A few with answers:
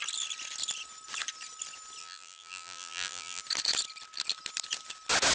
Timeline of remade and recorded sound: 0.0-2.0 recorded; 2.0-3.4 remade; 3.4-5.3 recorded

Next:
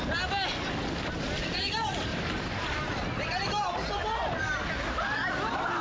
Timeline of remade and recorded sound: 0.0-2.1 recorded; 2.1-5.8 remade

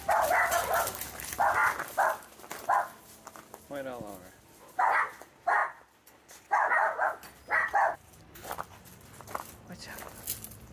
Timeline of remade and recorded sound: 0.0-10.7 recorded

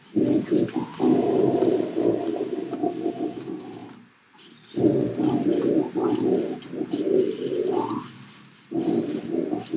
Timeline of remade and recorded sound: 0.0-9.8 recorded

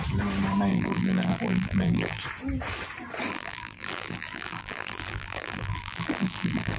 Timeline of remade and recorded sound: 0.0-0.7 recorded; 0.7-2.2 remade; 2.2-3.3 recorded; 3.3-6.8 remade

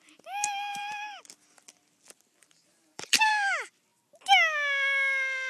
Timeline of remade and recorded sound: 0.0-0.7 recorded; 0.7-1.2 remade; 1.2-2.4 recorded; 2.4-3.3 remade; 3.3-5.5 recorded

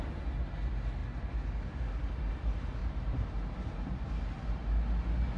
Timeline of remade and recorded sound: 0.0-2.8 recorded; 2.8-4.1 remade; 4.1-5.4 recorded